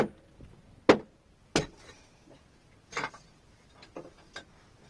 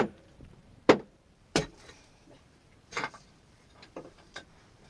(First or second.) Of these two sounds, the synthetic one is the second